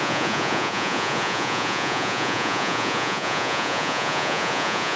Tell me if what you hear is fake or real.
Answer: fake